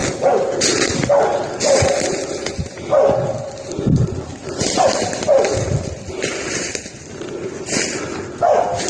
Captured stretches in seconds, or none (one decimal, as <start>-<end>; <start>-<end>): 0.0-8.9